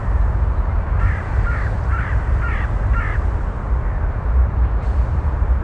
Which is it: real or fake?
fake